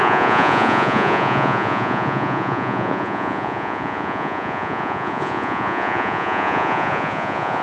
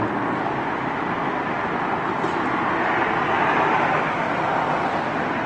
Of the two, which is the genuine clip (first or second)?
second